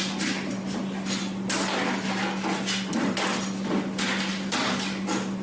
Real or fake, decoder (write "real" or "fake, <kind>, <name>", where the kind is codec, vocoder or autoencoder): real